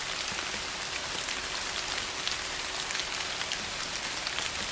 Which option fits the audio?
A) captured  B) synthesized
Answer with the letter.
A